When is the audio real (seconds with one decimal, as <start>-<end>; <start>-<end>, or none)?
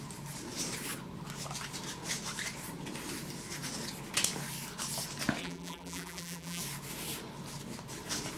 0.0-5.4; 6.6-8.4